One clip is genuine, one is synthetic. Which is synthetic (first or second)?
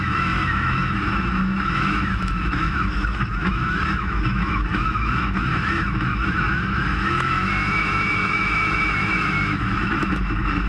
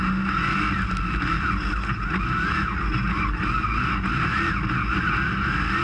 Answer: first